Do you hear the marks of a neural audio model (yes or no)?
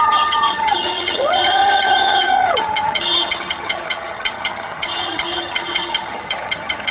yes